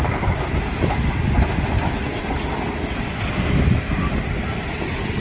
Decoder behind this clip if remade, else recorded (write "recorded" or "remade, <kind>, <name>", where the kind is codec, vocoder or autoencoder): recorded